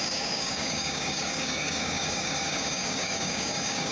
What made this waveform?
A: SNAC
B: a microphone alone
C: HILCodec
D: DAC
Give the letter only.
D